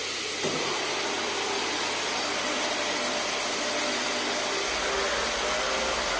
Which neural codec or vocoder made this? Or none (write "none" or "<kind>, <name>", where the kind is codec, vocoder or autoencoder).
none